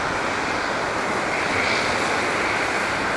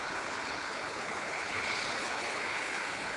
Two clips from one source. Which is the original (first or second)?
first